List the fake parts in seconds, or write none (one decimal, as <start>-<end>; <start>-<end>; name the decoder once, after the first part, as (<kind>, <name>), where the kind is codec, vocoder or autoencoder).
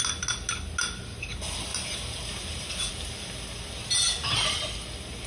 1.7-2.9 (vocoder, BigVGAN v2)